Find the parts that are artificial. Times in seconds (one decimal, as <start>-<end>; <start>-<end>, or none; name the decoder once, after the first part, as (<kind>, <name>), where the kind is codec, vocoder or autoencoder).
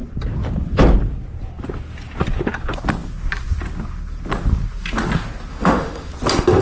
5.5-6.1 (autoencoder, DAC-VAE)